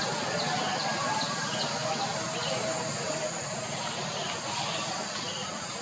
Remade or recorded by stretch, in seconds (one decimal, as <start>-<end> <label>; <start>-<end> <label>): 0.0-5.8 recorded